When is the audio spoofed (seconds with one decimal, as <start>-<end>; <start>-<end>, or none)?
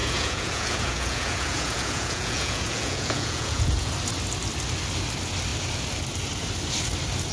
0.0-3.9